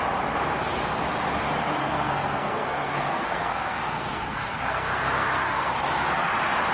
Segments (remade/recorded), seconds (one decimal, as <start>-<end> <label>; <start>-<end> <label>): 0.0-1.8 recorded; 1.8-5.7 remade; 5.7-6.7 recorded